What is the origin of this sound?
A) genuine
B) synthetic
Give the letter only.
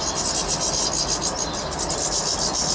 A